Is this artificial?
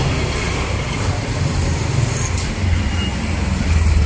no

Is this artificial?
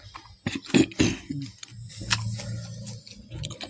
no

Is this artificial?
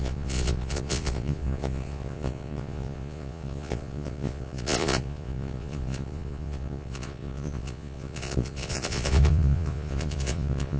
yes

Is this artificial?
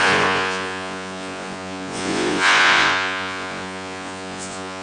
yes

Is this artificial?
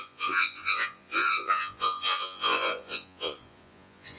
yes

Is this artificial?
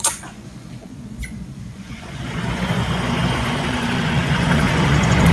yes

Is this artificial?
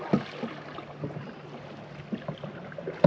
no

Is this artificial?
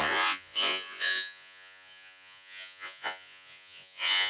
yes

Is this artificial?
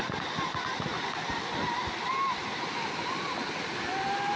no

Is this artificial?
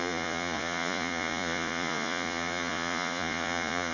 yes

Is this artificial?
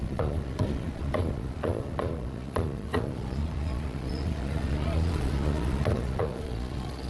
yes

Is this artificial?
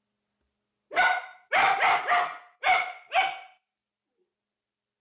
no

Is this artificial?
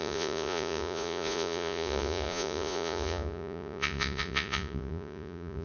yes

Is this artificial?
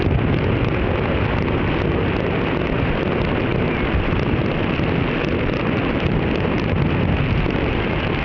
no